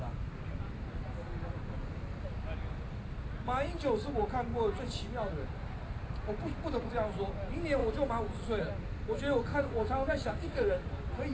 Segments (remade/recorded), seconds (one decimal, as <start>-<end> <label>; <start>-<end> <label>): 0.0-9.5 recorded; 9.5-10.8 remade; 10.8-11.3 recorded